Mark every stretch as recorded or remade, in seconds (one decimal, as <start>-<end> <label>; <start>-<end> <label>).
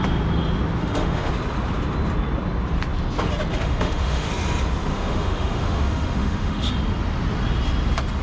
0.0-0.8 recorded; 0.8-1.3 remade; 1.3-3.5 recorded; 3.5-4.3 remade; 4.3-4.9 recorded; 4.9-6.7 remade; 6.7-8.2 recorded